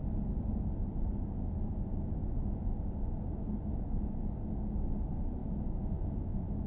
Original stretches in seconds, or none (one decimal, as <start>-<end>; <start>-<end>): 0.0-5.4